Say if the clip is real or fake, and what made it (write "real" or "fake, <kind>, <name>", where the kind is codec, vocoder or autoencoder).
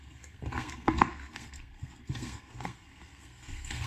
fake, codec, SNAC